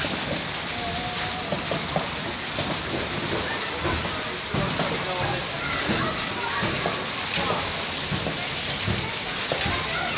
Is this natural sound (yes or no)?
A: yes